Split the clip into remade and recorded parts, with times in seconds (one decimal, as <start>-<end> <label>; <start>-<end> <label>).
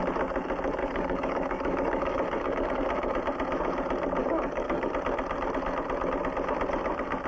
0.0-0.8 recorded; 0.8-2.8 remade; 2.8-4.2 recorded; 4.2-4.9 remade; 4.9-7.3 recorded